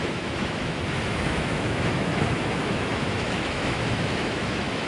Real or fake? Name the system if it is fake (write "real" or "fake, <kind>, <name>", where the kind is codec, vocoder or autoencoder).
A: fake, autoencoder, DAC-VAE